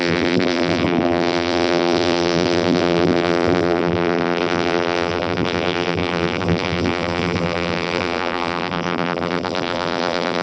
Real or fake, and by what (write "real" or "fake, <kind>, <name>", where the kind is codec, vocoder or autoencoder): fake, vocoder, BigVGAN v2